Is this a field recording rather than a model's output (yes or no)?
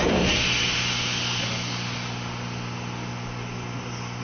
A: yes